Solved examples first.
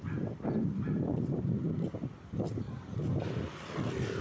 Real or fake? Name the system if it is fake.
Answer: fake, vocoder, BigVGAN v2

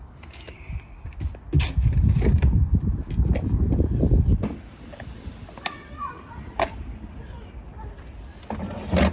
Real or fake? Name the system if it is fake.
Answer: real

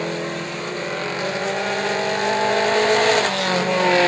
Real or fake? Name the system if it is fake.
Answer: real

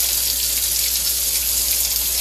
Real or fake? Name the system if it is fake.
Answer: real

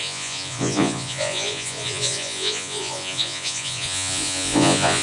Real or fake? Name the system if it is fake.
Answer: fake, vocoder, Vocos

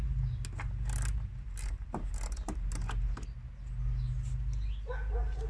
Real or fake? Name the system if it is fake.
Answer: real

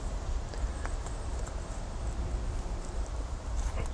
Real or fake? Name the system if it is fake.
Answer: fake, vocoder, BigVGAN v2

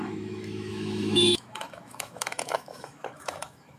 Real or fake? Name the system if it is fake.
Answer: fake, autoencoder, DAC-VAE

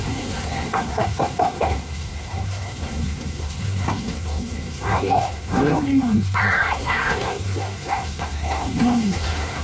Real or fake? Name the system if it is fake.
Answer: fake, codec, SNAC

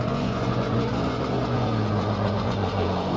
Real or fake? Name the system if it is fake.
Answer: fake, vocoder, Vocos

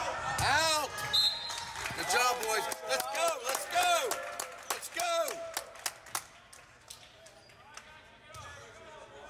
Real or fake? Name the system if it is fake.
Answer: real